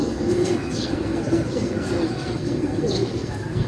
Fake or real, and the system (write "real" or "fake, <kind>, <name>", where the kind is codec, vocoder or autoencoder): fake, codec, SNAC